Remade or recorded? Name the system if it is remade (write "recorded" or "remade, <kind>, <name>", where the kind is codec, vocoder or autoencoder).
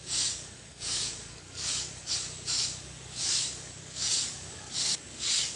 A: remade, codec, DAC